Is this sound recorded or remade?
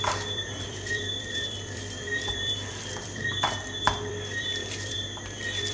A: remade